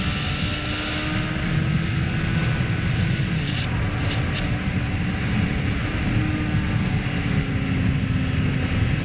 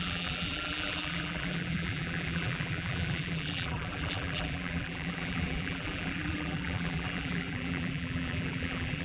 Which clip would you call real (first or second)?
first